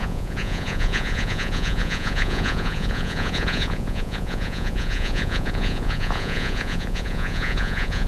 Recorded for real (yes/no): no